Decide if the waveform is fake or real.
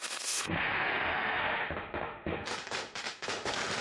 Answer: fake